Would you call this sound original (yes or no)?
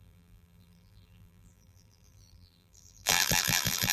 no